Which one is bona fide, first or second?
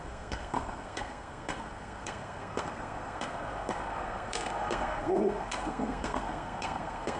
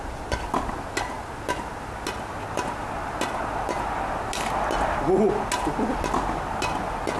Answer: second